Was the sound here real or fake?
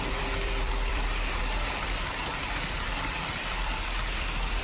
fake